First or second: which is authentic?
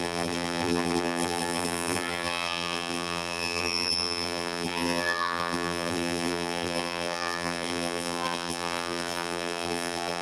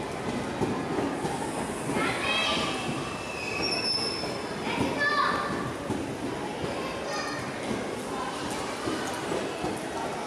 second